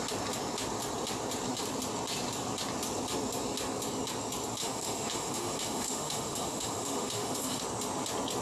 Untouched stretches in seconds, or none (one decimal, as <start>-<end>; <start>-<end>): 0.0-4.6; 7.6-8.4